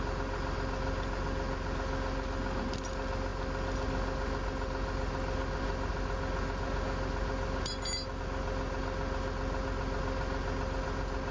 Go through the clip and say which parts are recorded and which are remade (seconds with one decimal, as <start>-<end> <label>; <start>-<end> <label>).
0.0-11.3 recorded